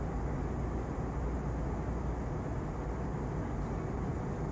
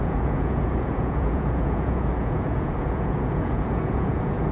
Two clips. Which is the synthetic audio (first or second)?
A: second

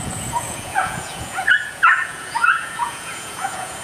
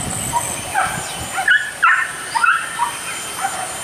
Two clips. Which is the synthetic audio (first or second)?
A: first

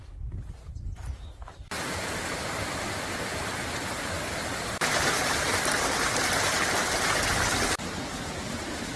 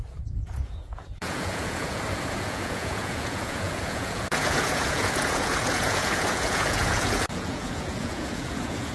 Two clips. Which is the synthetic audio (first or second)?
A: second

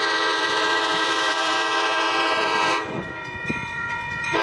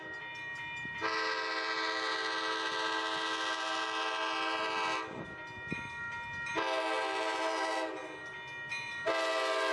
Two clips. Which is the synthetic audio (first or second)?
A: first